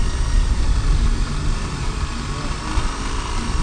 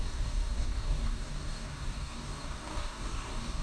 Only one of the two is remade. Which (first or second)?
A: second